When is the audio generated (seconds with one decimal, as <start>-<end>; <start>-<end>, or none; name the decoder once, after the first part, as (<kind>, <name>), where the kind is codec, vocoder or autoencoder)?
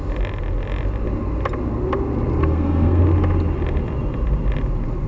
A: 2.4-3.0 (codec, SNAC)